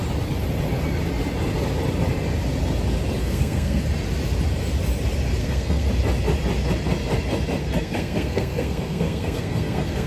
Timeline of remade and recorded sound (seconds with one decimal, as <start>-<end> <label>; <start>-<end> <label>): 0.0-3.2 recorded; 3.2-3.8 remade; 3.8-5.4 recorded; 5.4-5.9 remade; 5.9-7.6 recorded; 7.6-10.1 remade